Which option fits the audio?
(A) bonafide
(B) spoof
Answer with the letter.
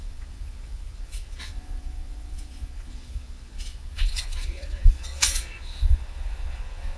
B